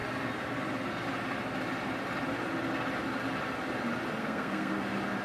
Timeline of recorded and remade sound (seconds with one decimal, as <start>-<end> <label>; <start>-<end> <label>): 0.0-4.2 recorded; 4.2-4.7 remade; 4.7-5.2 recorded